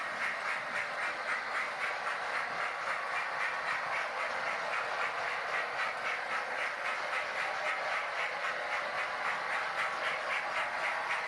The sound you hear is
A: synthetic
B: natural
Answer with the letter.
B